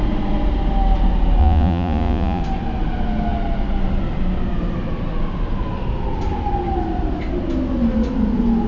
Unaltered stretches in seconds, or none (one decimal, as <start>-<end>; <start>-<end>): 0.0-1.4; 2.4-8.7